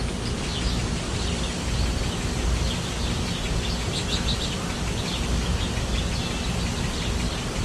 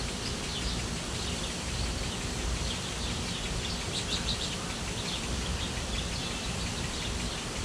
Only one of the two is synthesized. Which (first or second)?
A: second